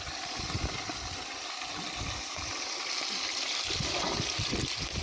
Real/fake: real